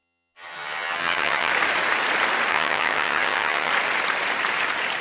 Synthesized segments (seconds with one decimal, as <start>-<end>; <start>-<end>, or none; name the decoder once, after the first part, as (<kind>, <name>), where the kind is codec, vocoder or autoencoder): 0.0-1.5 (vocoder, HiFi-GAN); 2.5-3.7